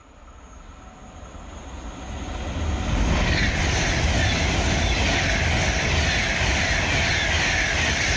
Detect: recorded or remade recorded